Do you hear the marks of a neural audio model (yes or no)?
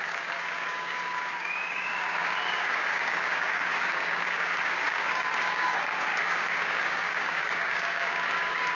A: yes